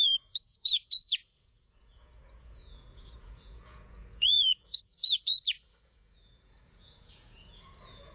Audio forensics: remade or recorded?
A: remade